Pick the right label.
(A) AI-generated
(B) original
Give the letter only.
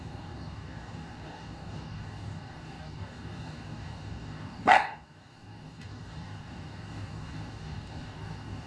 A